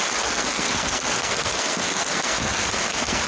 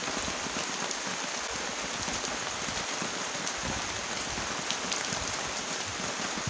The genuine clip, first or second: second